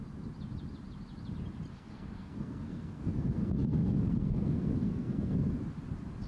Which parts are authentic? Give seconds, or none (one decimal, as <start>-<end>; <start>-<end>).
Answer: 0.0-1.7; 5.5-6.3